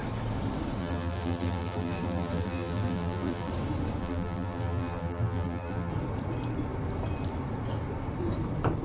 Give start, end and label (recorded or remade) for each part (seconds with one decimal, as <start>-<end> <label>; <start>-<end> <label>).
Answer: 0.0-0.8 recorded; 0.8-3.5 remade; 3.5-4.0 recorded; 4.0-5.9 remade; 5.9-8.8 recorded